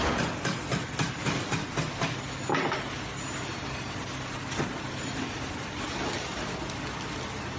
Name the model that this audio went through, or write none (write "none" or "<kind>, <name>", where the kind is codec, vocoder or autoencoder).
none